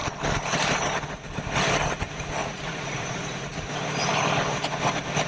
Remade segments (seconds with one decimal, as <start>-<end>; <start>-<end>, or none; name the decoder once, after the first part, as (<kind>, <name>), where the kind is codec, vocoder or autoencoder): 2.4-3.6 (vocoder, Vocos)